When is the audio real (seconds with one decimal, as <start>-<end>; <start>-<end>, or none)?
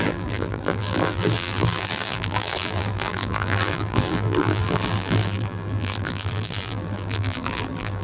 none